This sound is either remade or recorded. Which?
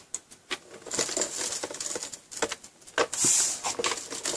recorded